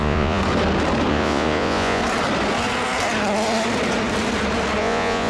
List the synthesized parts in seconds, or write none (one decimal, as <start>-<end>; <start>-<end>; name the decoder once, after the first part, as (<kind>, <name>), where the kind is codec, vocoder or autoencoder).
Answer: 0.0-0.4 (vocoder, Vocos); 1.1-2.0; 4.8-5.3